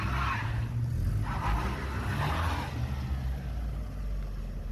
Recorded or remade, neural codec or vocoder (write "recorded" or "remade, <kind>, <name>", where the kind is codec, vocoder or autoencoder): recorded